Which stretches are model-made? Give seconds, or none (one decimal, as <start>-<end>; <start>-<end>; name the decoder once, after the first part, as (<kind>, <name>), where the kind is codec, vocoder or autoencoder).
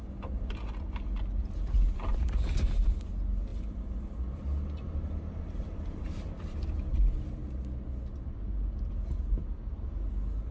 1.4-3.1 (vocoder, BigVGAN v2); 3.5-7.5